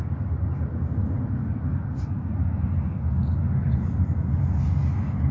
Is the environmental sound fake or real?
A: real